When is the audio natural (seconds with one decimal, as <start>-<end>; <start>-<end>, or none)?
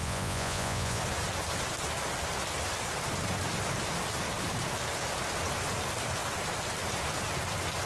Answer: 1.0-7.9